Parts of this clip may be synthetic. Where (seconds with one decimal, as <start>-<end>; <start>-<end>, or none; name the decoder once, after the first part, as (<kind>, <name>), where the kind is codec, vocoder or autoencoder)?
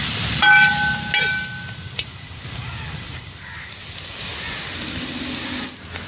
none